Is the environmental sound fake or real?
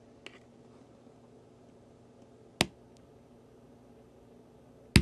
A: real